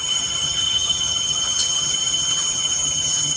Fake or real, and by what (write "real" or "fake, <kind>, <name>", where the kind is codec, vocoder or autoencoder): fake, vocoder, HiFi-GAN